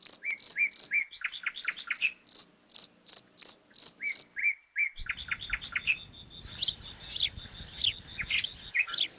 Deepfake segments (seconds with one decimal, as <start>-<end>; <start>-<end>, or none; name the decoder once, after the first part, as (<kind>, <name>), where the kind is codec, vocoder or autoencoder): none